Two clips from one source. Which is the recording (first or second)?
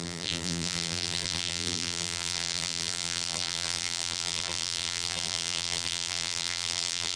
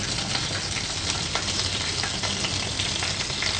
second